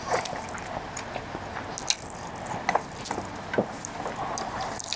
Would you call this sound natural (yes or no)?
yes